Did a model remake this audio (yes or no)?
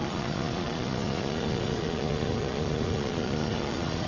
yes